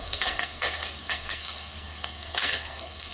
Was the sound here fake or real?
fake